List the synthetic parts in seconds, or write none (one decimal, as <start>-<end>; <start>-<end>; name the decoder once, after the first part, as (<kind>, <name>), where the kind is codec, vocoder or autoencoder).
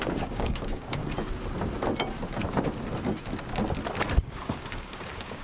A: 0.0-1.0 (codec, DAC); 4.2-5.4